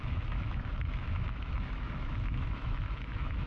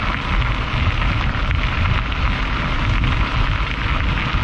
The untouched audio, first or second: second